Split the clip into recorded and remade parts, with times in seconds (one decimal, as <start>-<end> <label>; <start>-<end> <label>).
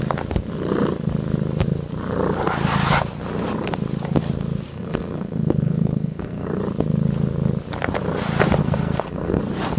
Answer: 0.0-4.7 recorded; 4.7-6.6 remade; 6.6-8.6 recorded; 8.6-9.4 remade; 9.4-9.8 recorded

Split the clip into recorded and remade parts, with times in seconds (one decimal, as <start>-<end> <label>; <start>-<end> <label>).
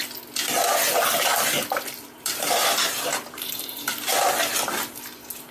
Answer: 0.0-1.3 recorded; 1.3-3.9 remade; 3.9-5.5 recorded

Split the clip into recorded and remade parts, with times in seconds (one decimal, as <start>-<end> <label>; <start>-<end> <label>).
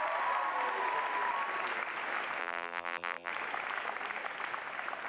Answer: 0.0-2.4 recorded; 2.4-3.3 remade; 3.3-5.1 recorded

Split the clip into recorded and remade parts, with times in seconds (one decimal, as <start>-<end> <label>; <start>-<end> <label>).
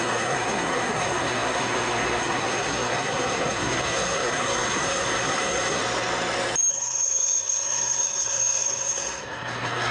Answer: 0.0-5.8 remade; 5.8-6.7 recorded; 6.7-9.9 remade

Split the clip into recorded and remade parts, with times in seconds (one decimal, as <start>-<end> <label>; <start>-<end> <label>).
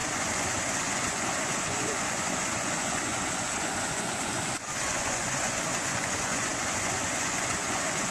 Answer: 0.0-8.1 remade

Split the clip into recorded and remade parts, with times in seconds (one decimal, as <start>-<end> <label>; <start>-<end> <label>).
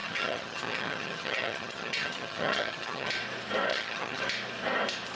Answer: 0.0-3.1 remade; 3.1-3.7 recorded; 3.7-4.2 remade; 4.2-5.2 recorded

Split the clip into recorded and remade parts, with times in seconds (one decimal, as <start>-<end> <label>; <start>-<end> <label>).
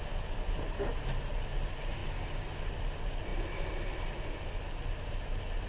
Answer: 0.0-5.7 recorded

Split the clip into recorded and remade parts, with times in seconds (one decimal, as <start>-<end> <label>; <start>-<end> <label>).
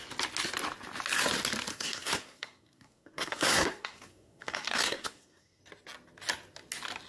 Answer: 0.0-1.7 recorded; 1.7-5.6 remade; 5.6-7.1 recorded